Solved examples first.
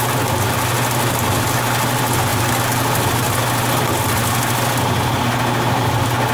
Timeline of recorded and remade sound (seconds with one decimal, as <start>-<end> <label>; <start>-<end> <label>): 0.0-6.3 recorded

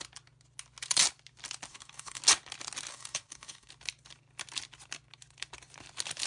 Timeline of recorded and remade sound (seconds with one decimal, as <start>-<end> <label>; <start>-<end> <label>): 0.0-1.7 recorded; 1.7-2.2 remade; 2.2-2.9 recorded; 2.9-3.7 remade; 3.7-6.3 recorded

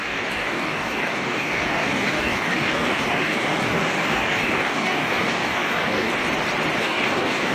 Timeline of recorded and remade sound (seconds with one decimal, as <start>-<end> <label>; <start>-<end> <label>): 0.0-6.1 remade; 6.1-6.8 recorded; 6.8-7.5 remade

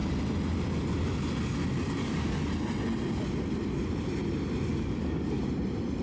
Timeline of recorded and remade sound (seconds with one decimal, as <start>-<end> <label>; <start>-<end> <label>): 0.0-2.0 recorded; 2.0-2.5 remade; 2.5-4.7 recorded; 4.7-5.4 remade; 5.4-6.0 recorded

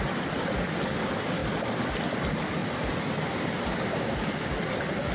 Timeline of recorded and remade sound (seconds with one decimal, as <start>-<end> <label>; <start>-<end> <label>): 0.0-3.9 recorded; 3.9-4.5 remade; 4.5-5.1 recorded